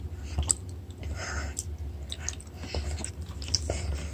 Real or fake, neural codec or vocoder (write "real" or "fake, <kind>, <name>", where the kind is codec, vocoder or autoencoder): real